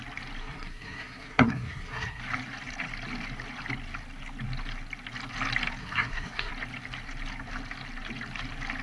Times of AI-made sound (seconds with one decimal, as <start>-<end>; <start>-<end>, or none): 0.4-2.2; 5.8-6.5